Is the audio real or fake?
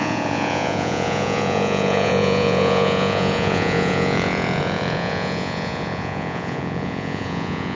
fake